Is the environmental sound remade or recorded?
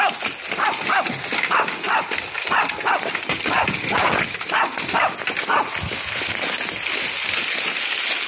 recorded